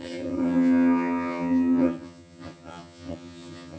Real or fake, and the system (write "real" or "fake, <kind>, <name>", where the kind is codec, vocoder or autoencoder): fake, vocoder, HiFi-GAN